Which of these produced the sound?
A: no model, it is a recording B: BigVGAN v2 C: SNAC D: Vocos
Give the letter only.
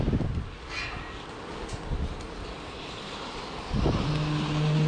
A